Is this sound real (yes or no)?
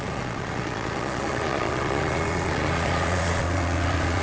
no